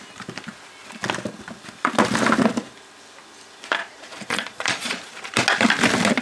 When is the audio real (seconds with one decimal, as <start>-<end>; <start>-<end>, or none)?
0.0-3.8; 5.0-6.2